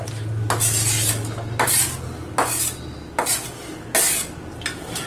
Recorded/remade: recorded